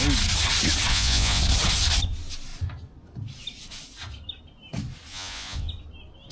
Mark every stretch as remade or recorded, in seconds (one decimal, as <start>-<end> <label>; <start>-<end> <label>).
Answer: 0.0-0.9 recorded; 0.9-1.4 remade; 1.4-5.1 recorded; 5.1-5.7 remade; 5.7-6.3 recorded